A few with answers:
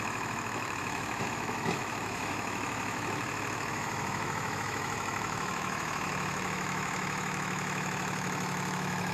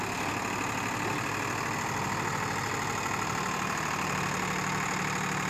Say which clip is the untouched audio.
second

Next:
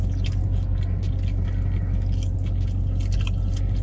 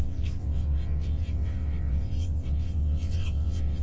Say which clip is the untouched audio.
first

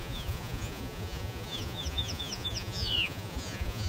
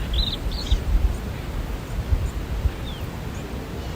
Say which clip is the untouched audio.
second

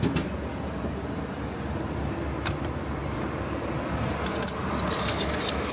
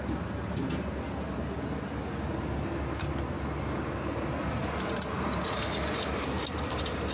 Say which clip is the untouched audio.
second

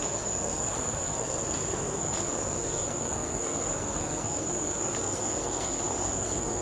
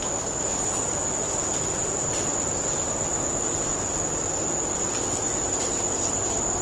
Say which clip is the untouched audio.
second